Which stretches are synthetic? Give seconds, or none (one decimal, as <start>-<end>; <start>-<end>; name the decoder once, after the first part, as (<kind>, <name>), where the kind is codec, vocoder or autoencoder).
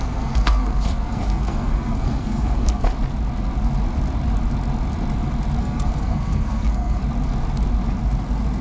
0.0-2.9 (codec, SNAC); 5.6-7.0